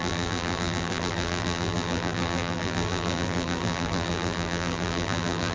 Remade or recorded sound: remade